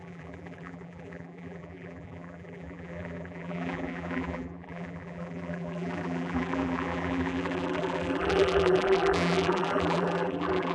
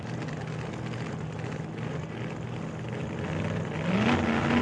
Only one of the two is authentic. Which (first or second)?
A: second